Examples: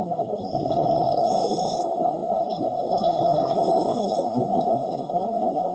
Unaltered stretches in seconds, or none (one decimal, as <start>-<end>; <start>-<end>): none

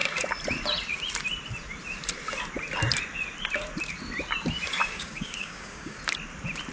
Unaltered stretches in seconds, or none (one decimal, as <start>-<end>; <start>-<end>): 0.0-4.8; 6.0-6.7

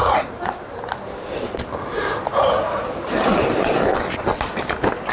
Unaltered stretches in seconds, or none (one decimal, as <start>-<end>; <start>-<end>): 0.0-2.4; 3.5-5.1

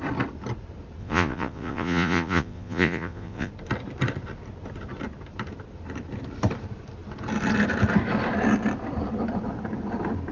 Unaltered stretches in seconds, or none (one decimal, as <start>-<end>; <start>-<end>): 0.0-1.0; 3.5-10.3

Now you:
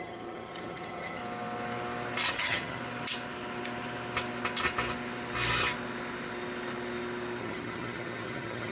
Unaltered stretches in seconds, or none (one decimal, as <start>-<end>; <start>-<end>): 1.2-2.3; 2.8-7.4